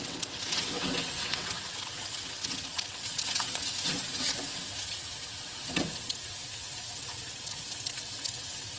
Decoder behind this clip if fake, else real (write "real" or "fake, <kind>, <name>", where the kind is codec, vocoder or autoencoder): fake, vocoder, WaveNeXt